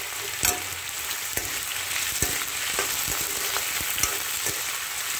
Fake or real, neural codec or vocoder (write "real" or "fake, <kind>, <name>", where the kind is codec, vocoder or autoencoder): real